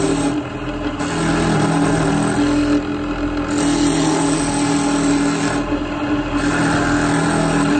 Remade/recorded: recorded